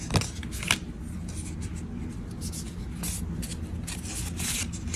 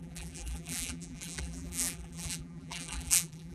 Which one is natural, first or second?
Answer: first